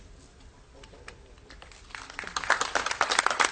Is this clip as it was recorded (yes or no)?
yes